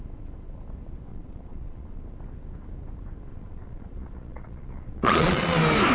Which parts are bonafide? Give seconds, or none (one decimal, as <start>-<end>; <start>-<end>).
0.0-1.1; 2.0-3.3; 5.4-5.9